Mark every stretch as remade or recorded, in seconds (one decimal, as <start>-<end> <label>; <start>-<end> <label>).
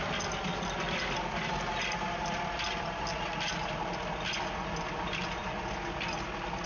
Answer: 0.0-6.7 recorded